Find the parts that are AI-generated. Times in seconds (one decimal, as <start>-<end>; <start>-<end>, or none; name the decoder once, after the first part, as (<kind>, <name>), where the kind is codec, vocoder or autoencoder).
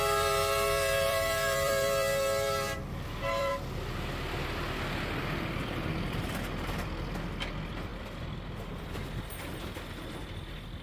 0.0-3.5 (vocoder, BigVGAN v2); 5.2-10.8